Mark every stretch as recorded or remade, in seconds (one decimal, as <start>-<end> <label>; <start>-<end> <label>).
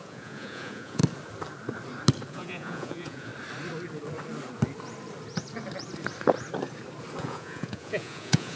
0.0-1.0 remade; 1.0-2.3 recorded; 2.3-3.3 remade; 3.3-7.2 recorded; 7.2-8.6 remade